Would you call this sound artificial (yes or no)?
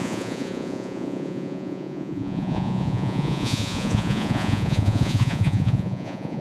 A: yes